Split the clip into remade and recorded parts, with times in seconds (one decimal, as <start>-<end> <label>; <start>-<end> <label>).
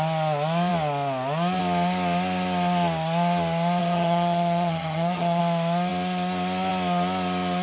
0.0-3.8 recorded; 3.8-5.4 remade; 5.4-7.6 recorded